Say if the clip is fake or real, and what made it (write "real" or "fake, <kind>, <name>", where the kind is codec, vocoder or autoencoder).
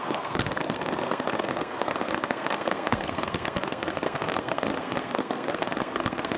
fake, codec, SNAC